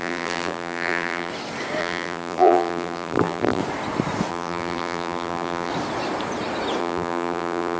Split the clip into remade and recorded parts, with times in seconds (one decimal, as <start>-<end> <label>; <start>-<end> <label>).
0.0-1.3 remade; 1.3-1.8 recorded; 1.8-3.6 remade; 3.6-4.3 recorded; 4.3-5.7 remade; 5.7-6.8 recorded; 6.8-7.8 remade